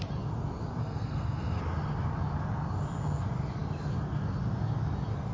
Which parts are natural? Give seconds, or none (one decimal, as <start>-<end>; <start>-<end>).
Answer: 0.0-0.8; 1.6-5.3